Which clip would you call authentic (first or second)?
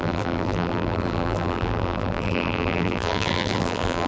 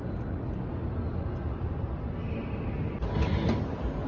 second